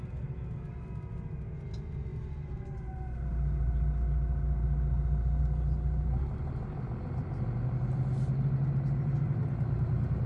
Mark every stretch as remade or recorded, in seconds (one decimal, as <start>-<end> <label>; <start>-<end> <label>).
0.0-10.3 recorded